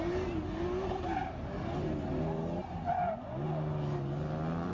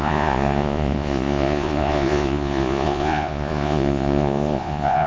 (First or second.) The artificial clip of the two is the second